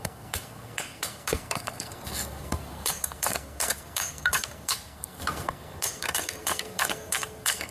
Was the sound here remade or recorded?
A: remade